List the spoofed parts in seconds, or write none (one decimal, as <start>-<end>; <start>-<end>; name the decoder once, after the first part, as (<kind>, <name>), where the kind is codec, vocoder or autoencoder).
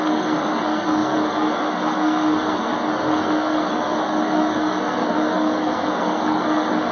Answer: 0.0-6.9 (codec, SNAC)